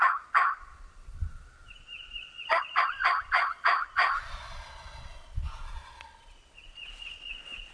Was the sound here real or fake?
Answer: fake